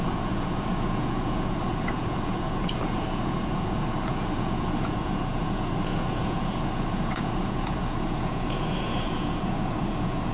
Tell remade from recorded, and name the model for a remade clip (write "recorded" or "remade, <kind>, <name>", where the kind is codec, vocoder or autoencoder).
remade, vocoder, Vocos